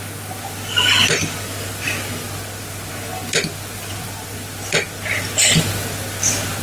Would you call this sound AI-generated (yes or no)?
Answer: no